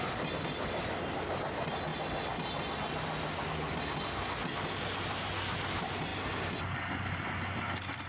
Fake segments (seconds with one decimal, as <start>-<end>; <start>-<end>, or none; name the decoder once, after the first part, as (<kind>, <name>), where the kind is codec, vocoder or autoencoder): 6.1-6.6 (vocoder, BigVGAN v2)